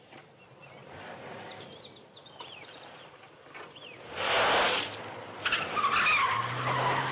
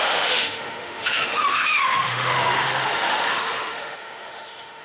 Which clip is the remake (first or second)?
second